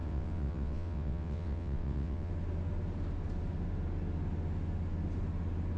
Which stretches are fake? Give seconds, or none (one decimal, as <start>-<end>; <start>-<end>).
0.0-2.3